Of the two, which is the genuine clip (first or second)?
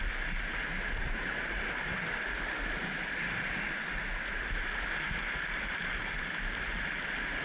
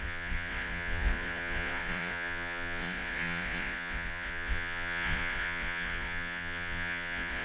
first